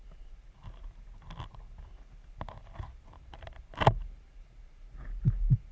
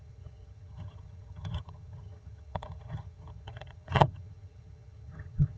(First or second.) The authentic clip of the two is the first